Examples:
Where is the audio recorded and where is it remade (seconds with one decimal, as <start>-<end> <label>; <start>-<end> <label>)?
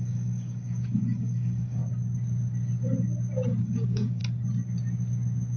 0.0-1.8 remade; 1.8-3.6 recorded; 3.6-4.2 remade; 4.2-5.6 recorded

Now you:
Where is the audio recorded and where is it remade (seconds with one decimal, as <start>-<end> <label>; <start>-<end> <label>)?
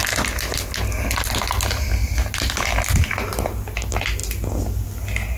0.0-5.4 recorded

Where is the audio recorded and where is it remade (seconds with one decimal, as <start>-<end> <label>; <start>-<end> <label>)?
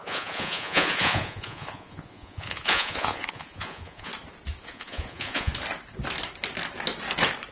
0.0-4.1 remade; 4.1-4.6 recorded; 4.6-5.5 remade; 5.5-7.5 recorded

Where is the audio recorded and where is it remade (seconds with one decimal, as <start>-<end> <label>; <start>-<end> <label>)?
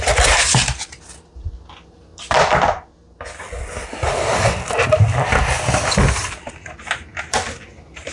0.0-8.1 recorded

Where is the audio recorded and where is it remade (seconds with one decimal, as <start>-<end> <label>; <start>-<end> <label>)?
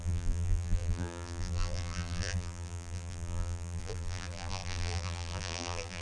0.0-6.0 remade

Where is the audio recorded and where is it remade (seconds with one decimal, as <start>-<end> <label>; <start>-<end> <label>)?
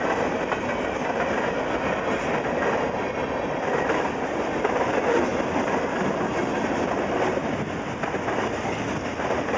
0.0-9.6 recorded